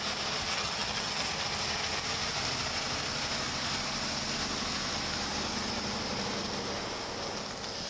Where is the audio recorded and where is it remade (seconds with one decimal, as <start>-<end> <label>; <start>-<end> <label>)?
0.0-0.5 recorded; 0.5-1.3 remade; 1.3-7.9 recorded